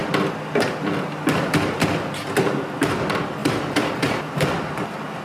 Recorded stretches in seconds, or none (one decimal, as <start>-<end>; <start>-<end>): 0.0-3.4; 4.5-5.2